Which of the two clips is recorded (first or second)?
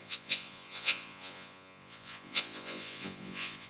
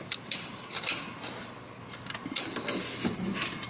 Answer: second